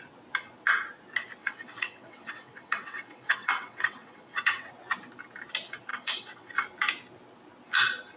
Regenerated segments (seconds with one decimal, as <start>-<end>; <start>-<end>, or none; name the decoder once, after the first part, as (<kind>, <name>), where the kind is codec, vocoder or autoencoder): 1.4-4.7 (vocoder, WaveNeXt); 5.9-6.5